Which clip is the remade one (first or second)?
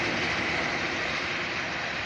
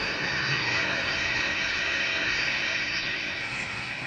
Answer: second